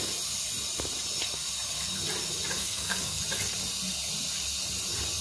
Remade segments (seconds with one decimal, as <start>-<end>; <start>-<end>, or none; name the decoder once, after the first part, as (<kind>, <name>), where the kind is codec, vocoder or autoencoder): 2.6-3.2 (codec, SNAC)